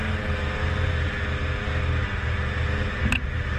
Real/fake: real